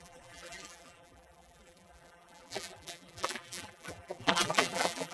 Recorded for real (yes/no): no